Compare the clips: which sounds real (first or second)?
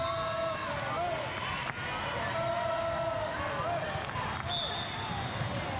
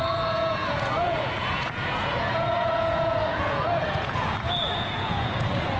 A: first